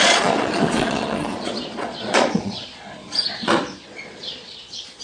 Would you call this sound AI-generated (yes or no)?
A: yes